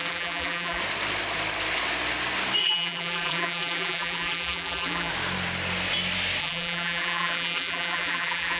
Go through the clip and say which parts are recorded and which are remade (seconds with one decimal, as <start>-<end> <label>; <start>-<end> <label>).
0.0-0.8 remade; 0.8-2.6 recorded; 2.6-5.1 remade; 5.1-6.4 recorded; 6.4-8.6 remade

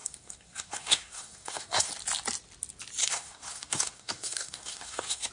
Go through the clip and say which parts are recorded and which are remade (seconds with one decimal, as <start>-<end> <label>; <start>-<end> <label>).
0.0-1.9 remade; 1.9-3.0 recorded; 3.0-5.3 remade

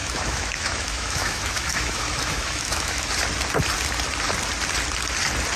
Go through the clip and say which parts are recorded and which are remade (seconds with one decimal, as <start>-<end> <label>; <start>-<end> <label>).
0.0-3.1 remade; 3.1-5.6 recorded

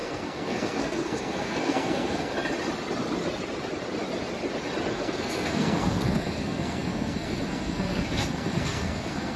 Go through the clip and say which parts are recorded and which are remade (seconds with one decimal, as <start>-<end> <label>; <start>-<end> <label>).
0.0-2.3 remade; 2.3-4.9 recorded; 4.9-9.4 remade

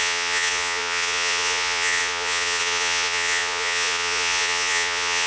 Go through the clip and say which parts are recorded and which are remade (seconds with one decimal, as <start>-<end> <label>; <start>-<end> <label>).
0.0-5.3 remade

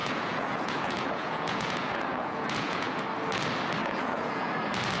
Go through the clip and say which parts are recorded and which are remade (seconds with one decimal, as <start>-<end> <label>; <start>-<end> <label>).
0.0-3.0 remade; 3.0-3.8 recorded; 3.8-4.5 remade; 4.5-5.0 recorded

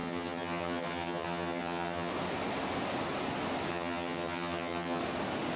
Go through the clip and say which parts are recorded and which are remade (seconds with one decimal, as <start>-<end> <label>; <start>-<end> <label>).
0.0-2.1 remade; 2.1-3.7 recorded; 3.7-5.0 remade; 5.0-5.6 recorded